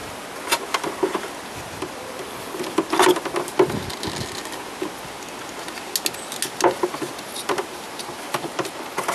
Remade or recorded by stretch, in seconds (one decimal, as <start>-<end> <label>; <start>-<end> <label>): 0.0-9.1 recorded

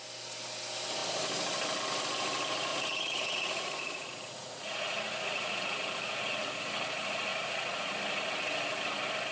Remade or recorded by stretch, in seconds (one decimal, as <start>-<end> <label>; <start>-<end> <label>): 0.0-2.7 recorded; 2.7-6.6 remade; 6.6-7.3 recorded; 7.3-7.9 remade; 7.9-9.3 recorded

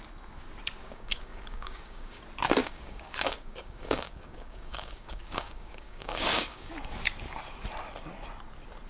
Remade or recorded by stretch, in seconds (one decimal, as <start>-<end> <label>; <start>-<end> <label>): 0.0-0.8 recorded; 0.8-2.2 remade; 2.2-2.6 recorded; 2.6-6.7 remade; 6.7-8.9 recorded

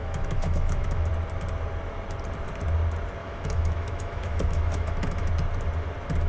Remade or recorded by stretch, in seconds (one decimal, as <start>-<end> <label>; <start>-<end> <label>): 0.0-1.1 remade; 1.1-3.2 recorded; 3.2-5.3 remade; 5.3-6.3 recorded